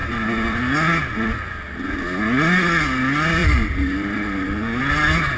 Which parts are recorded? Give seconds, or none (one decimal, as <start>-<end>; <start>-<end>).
0.0-3.4; 4.8-5.4